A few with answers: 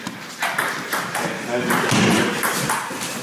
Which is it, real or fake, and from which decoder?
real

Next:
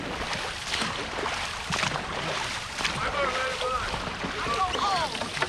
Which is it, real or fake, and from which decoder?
real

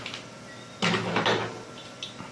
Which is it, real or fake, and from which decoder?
real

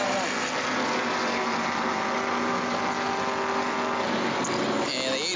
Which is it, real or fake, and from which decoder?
real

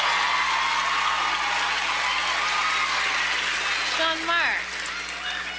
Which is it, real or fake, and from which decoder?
real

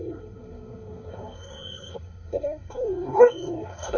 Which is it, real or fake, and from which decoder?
fake, codec, SNAC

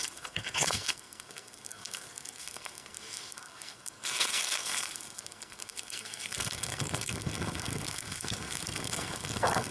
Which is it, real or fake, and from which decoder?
fake, codec, SNAC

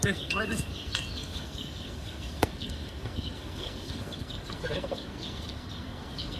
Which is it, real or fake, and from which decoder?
fake, codec, SNAC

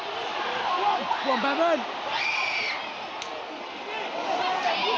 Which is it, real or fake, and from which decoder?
real